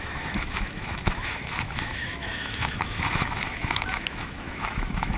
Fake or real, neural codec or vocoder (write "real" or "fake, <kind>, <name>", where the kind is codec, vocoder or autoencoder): fake, autoencoder, DAC-VAE